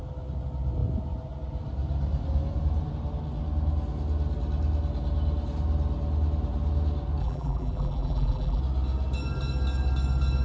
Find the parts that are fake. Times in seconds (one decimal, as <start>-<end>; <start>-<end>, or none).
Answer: 7.2-8.6